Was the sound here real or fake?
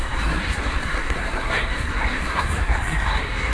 fake